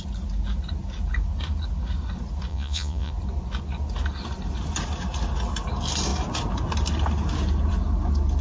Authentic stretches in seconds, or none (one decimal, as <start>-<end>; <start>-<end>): 0.0-2.5; 3.1-8.4